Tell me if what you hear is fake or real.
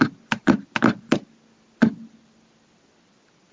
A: real